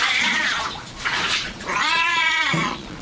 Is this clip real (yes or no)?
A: no